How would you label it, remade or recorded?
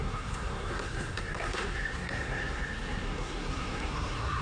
remade